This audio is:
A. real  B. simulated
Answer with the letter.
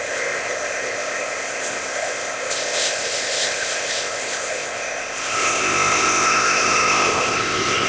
B